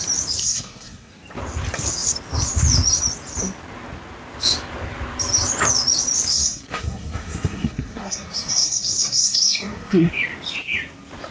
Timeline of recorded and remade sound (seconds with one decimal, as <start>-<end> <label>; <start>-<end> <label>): 0.0-0.4 recorded; 0.4-1.1 remade; 1.1-6.3 recorded; 6.3-10.1 remade; 10.1-11.3 recorded